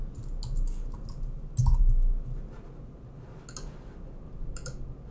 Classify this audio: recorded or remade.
recorded